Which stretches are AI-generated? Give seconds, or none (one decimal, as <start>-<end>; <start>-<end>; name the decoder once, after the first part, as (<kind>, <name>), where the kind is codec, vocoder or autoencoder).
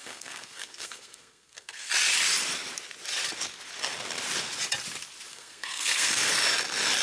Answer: 0.0-1.9 (codec, SNAC); 5.3-6.3